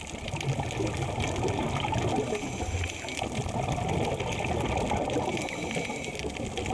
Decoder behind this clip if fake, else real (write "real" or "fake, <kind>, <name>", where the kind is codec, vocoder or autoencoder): real